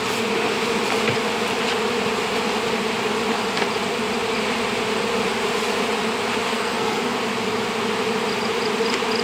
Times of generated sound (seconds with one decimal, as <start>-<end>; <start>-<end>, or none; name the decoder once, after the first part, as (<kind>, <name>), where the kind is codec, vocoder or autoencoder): 6.5-7.0 (codec, SNAC)